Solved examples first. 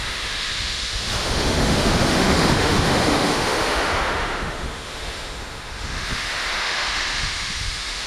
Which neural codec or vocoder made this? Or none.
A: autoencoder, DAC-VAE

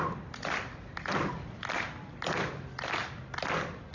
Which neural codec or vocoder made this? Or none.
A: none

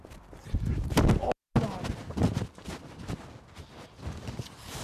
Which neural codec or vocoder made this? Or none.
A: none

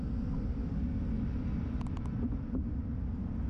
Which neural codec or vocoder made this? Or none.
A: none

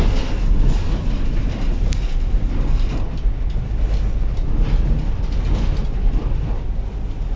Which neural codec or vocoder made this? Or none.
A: none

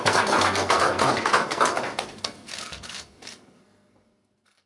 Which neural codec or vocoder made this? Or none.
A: codec, SNAC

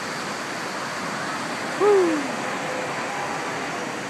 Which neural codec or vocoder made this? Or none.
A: none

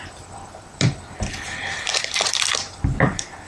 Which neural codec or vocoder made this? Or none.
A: vocoder, BigVGAN v2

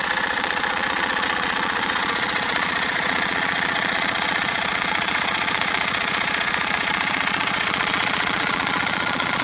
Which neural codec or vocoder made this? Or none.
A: vocoder, Vocos